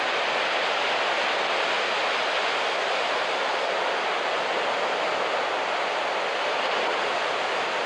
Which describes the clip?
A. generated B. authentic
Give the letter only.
B